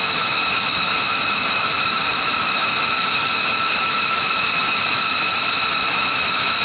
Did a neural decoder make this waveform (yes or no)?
yes